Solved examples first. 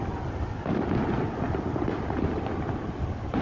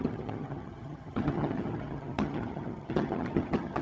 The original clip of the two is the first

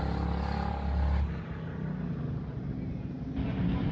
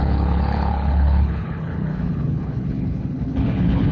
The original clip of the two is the first